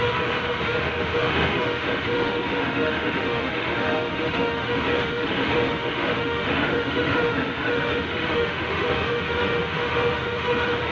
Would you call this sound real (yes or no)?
no